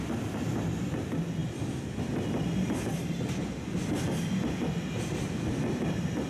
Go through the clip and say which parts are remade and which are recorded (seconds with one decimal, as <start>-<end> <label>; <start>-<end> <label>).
0.0-6.3 recorded